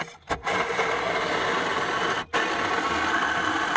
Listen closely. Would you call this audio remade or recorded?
recorded